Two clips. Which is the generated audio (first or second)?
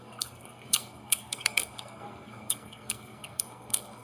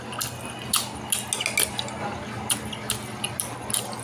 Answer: first